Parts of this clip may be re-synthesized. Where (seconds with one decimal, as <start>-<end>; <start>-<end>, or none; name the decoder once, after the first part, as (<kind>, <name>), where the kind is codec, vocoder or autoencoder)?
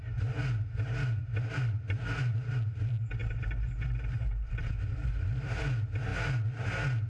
1.2-2.3 (vocoder, BigVGAN v2); 3.2-5.6